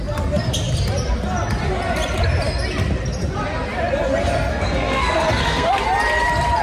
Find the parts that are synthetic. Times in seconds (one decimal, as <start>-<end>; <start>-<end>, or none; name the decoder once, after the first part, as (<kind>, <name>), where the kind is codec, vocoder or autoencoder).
4.5-5.7 (codec, SNAC)